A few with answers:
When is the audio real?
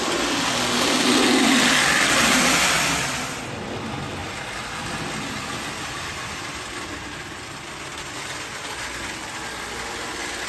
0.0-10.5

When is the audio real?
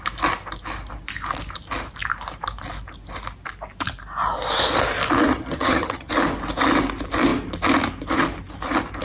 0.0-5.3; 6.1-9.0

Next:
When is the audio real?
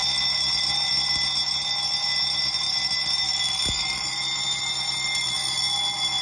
0.0-6.2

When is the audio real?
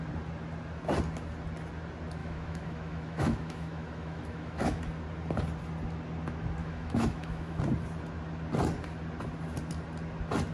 0.0-2.2; 4.8-6.6; 7.6-10.5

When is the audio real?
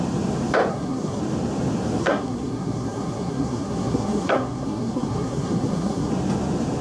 0.0-0.7; 1.2-2.0; 6.1-6.8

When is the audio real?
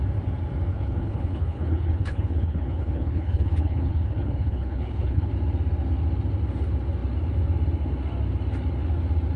0.0-0.7; 5.3-9.4